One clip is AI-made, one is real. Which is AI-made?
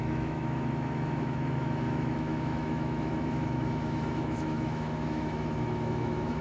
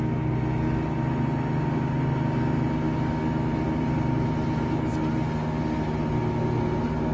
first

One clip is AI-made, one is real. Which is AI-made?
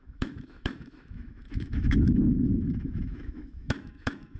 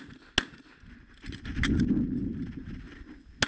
first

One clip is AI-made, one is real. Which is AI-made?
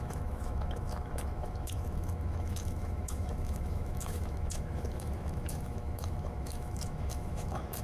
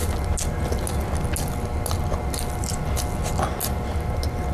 first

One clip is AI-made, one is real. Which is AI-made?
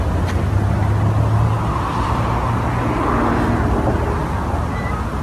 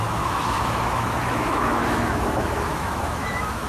second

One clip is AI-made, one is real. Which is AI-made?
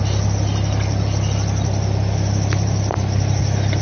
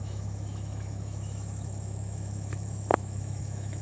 second